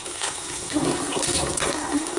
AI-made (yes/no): yes